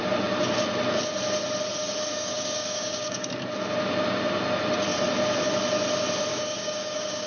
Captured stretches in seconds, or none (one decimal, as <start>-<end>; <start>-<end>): 0.0-2.1; 3.3-6.3